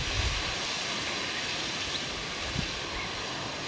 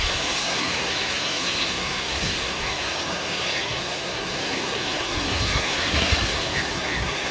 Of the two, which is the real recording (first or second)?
first